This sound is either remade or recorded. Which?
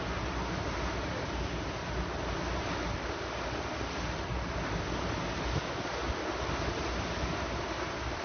recorded